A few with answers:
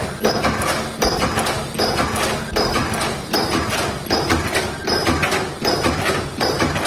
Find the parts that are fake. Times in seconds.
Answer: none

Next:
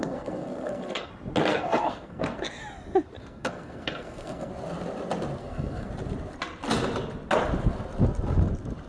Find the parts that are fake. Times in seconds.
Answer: 0.0-1.1 (codec, SNAC); 1.5-2.6; 3.2-4.5; 5.4-5.9

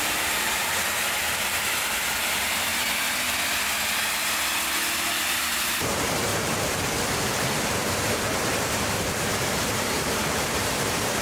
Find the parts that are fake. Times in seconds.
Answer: 0.0-2.7 (vocoder, BigVGAN v2); 5.7-11.2

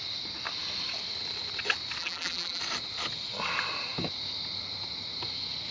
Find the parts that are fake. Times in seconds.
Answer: 2.0-2.6 (vocoder, BigVGAN v2)

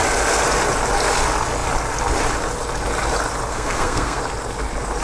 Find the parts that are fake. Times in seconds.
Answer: 3.5-4.2 (codec, SNAC)

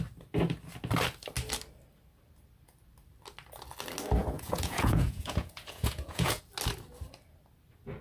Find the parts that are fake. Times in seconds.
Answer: 4.2-6.4 (vocoder, Vocos)

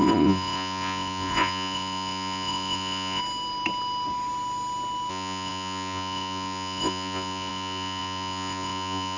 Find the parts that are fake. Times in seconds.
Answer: 0.0-3.2 (vocoder, Vocos); 5.1-9.2

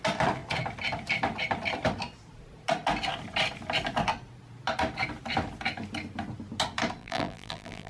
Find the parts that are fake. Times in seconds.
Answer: 7.0-7.9 (vocoder, BigVGAN v2)